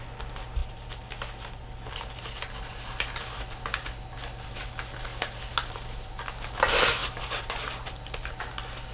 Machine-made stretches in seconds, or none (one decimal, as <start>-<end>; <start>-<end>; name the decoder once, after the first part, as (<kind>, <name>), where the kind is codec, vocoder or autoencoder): none